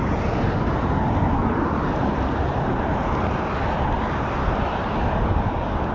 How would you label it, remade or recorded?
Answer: recorded